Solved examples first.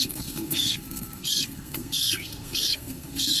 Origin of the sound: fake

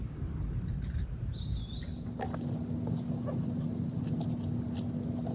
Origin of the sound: real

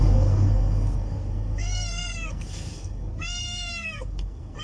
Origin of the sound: fake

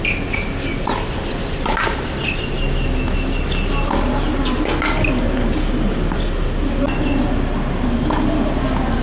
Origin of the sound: real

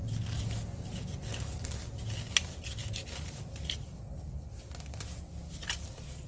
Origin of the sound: real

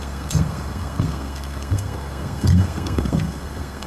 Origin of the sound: fake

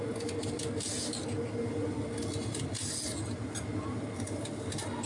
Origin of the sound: real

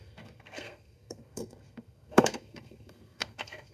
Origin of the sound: fake